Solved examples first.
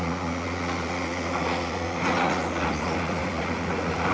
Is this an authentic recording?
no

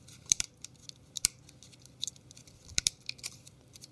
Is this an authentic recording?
no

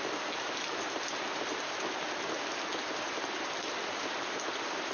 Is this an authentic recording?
yes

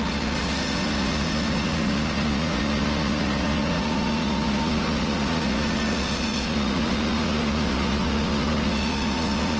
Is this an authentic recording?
no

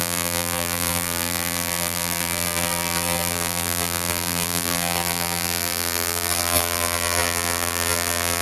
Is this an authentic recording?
no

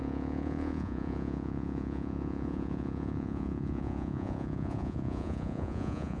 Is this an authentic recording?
no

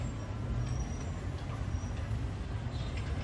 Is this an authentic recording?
yes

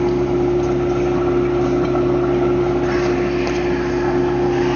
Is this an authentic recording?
yes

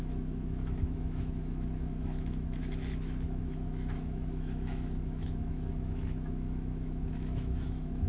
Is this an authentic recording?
no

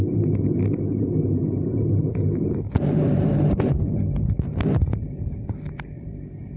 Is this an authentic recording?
no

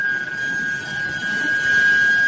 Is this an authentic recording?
yes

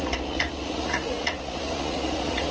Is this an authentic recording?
no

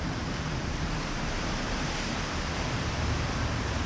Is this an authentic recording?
no